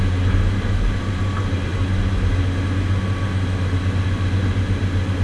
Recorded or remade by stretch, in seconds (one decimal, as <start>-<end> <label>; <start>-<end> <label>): 0.0-5.2 recorded